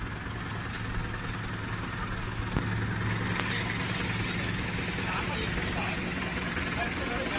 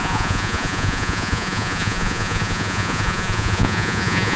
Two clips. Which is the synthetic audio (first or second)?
second